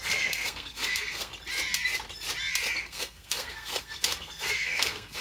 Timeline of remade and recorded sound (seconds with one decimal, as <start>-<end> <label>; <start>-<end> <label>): 0.0-1.3 remade; 1.3-2.8 recorded; 2.8-5.2 remade